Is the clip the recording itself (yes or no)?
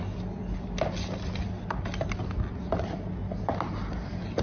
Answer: yes